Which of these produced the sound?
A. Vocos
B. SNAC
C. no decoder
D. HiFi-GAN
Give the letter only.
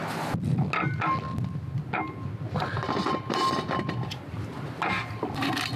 C